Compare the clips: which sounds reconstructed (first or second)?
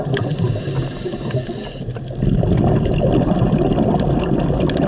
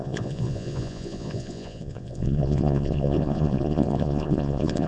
second